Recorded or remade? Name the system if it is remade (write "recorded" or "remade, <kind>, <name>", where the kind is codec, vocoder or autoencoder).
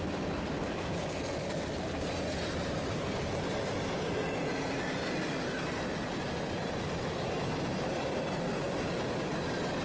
recorded